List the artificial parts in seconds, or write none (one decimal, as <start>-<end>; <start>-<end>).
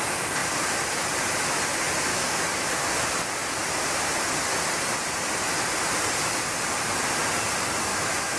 2.1-2.7; 7.9-8.4